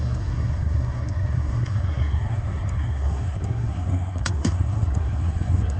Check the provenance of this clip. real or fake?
fake